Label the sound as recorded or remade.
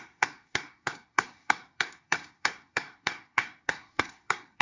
remade